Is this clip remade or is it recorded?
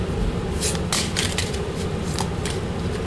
recorded